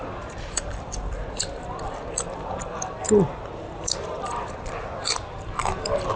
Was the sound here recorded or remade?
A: remade